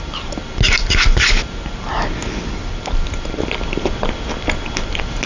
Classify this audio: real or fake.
real